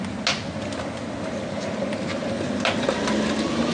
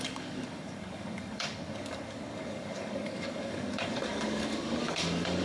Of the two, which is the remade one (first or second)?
second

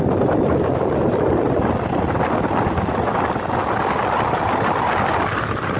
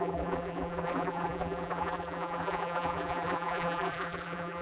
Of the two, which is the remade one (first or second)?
second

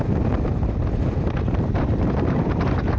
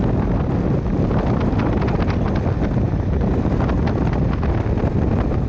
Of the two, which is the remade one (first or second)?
first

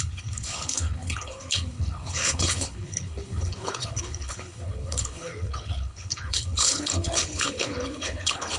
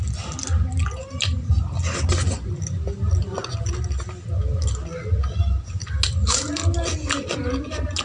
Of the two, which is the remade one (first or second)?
first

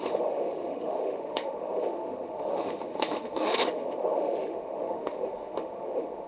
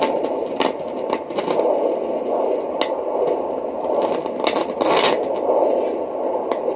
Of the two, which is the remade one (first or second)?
first